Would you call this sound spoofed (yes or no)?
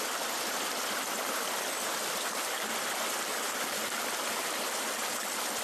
no